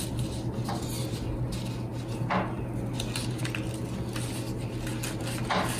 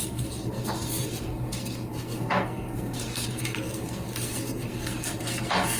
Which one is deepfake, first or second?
second